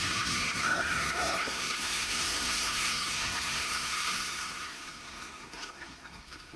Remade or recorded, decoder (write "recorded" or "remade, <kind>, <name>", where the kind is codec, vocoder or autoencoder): remade, codec, SNAC